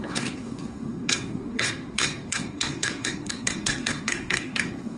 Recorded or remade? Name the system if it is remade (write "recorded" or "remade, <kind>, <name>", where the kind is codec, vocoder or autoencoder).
remade, codec, SNAC